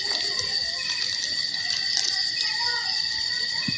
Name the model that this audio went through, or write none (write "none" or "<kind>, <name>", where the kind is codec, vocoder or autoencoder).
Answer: none